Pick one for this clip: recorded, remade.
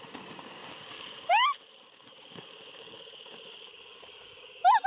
remade